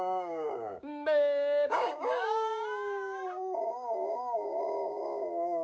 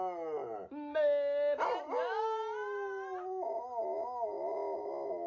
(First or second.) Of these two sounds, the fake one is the first